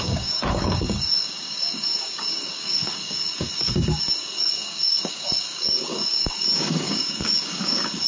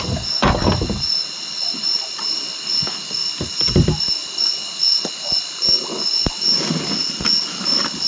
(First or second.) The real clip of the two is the second